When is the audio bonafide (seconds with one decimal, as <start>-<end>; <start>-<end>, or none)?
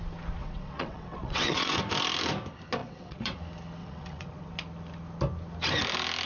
0.0-0.4; 1.8-2.8; 3.4-3.8; 4.5-6.2